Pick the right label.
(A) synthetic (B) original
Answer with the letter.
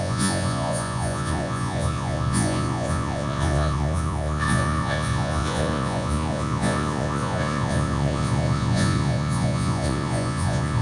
A